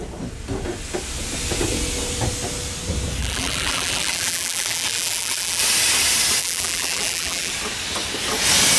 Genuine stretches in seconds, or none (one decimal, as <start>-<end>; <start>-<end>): 0.0-3.2; 5.6-6.4; 7.5-8.8